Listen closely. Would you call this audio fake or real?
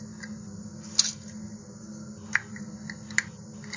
real